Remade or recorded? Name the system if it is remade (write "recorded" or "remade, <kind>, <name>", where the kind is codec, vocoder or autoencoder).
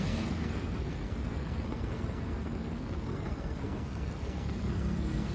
remade, codec, SNAC